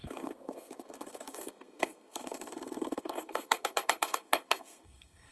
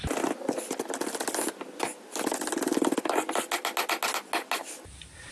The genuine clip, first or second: second